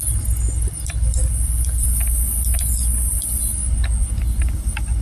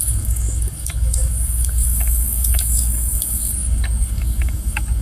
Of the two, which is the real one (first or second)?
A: first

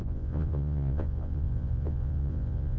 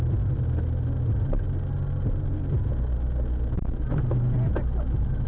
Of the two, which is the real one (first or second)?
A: second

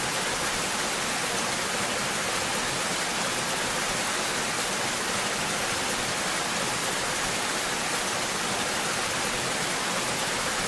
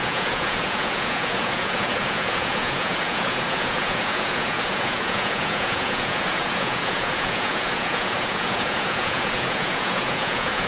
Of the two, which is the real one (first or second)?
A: first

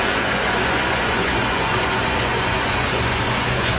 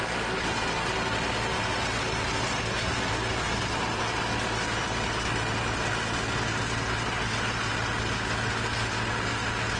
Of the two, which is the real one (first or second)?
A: second